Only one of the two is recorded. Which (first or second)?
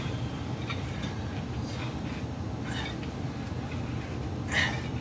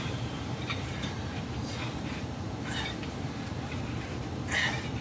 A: first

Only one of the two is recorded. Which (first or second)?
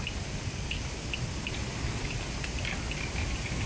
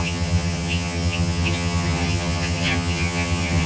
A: first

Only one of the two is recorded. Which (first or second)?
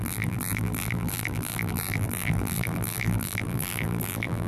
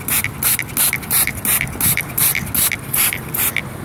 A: second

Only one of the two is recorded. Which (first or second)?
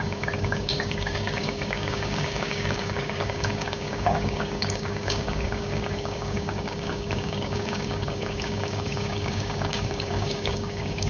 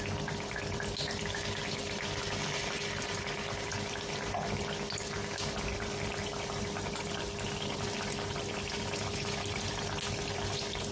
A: second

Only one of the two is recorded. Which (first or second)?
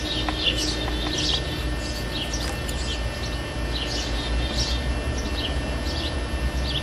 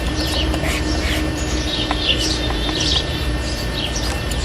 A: first